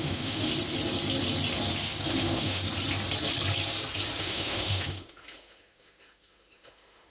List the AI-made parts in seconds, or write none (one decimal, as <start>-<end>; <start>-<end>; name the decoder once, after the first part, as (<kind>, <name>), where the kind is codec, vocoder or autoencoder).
0.0-0.5 (autoencoder, DAC-VAE); 2.1-2.6; 4.2-7.1